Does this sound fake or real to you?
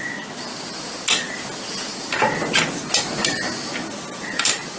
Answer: real